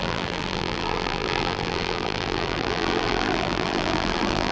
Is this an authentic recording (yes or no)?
no